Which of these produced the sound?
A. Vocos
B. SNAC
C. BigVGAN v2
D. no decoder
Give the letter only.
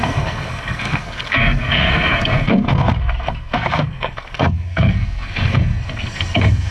B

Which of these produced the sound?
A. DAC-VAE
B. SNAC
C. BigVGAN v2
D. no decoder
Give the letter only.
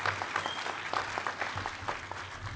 D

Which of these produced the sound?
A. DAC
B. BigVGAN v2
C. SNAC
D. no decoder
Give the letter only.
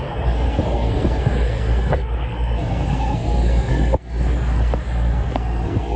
C